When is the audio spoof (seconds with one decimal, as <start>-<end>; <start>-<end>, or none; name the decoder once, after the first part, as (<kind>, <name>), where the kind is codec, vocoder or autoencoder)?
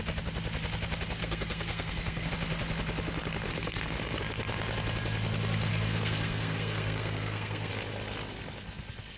1.2-2.3 (codec, SNAC); 3.5-4.2; 5.7-7.7